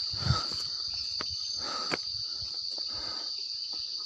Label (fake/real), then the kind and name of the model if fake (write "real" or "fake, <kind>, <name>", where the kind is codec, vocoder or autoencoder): real